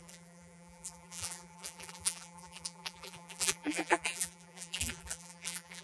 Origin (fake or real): fake